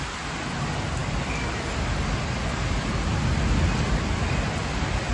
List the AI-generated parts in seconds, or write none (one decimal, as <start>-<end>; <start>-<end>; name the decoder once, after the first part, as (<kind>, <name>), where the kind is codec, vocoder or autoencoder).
none